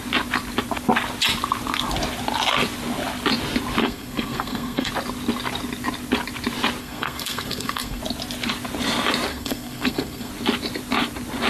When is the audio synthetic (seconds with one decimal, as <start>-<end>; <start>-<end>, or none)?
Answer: 3.8-4.9; 6.8-8.0; 9.3-10.3